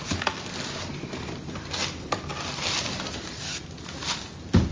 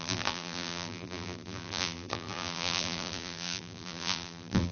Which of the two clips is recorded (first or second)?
first